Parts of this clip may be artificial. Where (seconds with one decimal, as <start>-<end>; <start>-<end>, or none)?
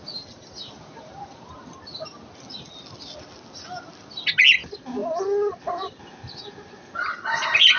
none